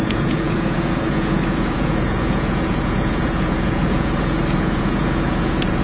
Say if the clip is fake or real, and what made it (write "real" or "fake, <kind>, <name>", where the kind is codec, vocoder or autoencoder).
fake, vocoder, Vocos